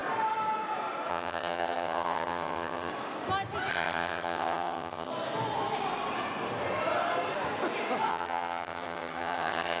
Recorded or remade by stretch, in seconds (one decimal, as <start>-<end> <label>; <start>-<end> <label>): 0.0-1.1 recorded; 1.1-2.9 remade; 2.9-3.7 recorded; 3.7-5.1 remade; 5.1-8.1 recorded; 8.1-9.8 remade